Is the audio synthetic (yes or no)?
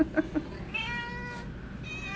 no